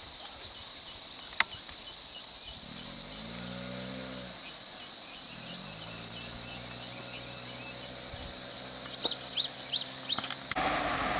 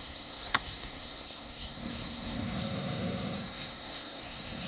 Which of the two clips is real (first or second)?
first